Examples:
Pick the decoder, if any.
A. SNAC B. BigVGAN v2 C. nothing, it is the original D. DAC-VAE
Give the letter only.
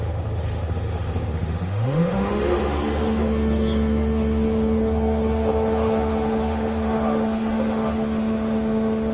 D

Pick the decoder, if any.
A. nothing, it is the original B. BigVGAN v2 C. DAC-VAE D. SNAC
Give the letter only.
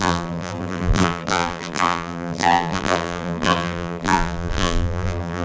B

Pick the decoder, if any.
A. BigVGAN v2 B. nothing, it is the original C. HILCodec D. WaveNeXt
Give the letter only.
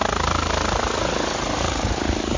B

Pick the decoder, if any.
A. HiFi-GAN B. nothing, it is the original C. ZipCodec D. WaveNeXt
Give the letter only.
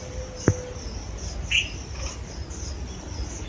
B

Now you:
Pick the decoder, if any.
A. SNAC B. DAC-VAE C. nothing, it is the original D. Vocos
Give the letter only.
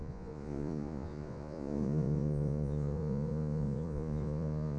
D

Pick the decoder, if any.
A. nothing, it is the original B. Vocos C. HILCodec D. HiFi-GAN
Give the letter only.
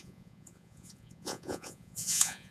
B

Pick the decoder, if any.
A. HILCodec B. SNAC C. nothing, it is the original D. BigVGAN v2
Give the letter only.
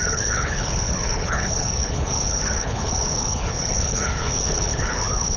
A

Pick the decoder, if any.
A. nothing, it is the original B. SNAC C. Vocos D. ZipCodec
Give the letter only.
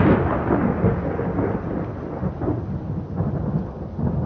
A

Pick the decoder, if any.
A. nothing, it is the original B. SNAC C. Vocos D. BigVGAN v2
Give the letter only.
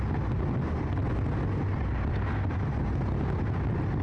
A